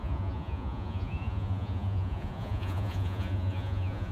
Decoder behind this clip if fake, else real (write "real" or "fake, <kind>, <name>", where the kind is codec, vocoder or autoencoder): fake, vocoder, Vocos